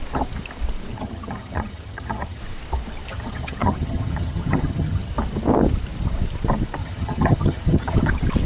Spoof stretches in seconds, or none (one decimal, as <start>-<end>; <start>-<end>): 0.9-2.4; 3.1-5.1; 6.8-8.1